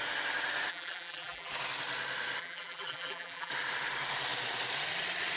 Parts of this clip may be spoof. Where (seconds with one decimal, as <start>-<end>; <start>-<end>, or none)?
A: 0.7-1.5; 2.4-3.5